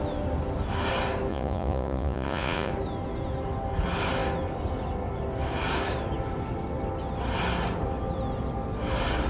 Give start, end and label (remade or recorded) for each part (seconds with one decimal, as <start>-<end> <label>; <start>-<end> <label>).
0.0-1.3 recorded; 1.3-2.7 remade; 2.7-9.3 recorded

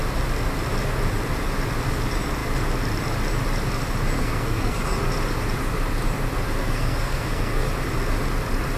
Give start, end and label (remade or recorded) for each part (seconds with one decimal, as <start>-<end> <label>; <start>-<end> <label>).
0.0-4.2 recorded; 4.2-5.0 remade; 5.0-6.6 recorded; 6.6-7.7 remade; 7.7-8.8 recorded

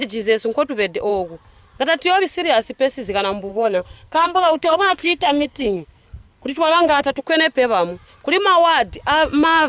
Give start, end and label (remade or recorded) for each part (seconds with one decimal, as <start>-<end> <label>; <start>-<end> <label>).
0.0-3.5 recorded; 3.5-7.2 remade; 7.2-9.7 recorded

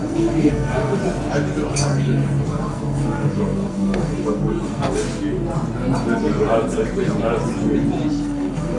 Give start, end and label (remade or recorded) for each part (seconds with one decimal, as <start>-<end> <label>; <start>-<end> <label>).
0.0-1.0 remade; 1.0-1.7 recorded; 1.7-5.0 remade; 5.0-8.1 recorded; 8.1-8.8 remade

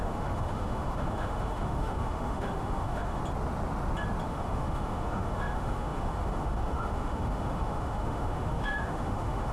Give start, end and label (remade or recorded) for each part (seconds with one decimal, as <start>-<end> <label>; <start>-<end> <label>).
0.0-3.2 remade; 3.2-4.3 recorded; 4.3-9.5 remade

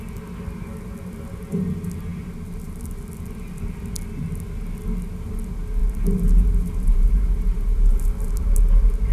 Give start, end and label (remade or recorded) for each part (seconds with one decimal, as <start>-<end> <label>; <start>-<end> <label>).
0.0-5.8 recorded; 5.8-8.7 remade; 8.7-9.1 recorded

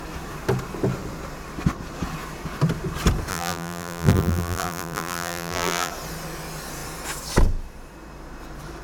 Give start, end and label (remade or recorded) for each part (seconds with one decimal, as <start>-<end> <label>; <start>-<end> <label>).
0.0-3.3 recorded; 3.3-5.9 remade; 5.9-8.8 recorded

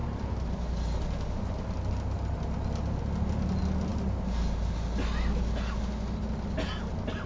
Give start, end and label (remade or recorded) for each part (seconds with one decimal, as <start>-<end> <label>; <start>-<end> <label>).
0.0-7.3 recorded